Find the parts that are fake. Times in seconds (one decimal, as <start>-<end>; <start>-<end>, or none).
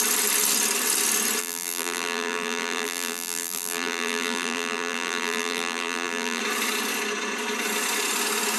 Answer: 1.4-6.4